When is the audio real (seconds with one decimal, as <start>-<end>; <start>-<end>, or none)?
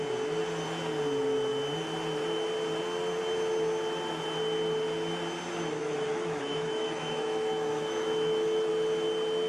0.0-5.8; 8.7-9.5